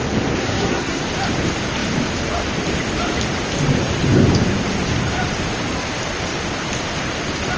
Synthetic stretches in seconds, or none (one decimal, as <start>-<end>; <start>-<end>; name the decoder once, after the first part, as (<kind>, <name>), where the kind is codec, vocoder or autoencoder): 0.4-1.0 (codec, SNAC)